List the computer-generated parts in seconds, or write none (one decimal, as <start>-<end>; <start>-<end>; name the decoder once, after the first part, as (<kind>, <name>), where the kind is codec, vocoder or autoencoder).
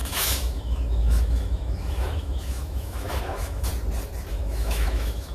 0.0-3.7 (autoencoder, DAC-VAE); 4.3-5.3